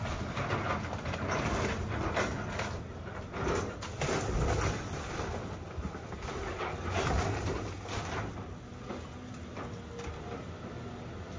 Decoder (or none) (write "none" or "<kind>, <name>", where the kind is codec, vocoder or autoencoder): none